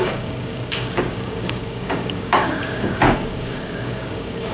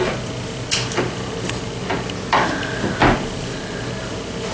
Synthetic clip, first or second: first